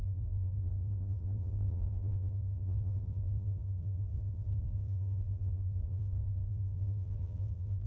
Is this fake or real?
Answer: fake